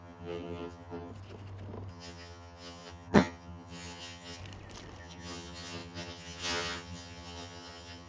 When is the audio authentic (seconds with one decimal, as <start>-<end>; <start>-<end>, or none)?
1.1-1.9; 4.4-5.0